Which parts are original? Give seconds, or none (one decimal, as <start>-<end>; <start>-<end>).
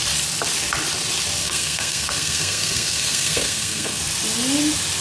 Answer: 0.0-1.4; 4.0-5.0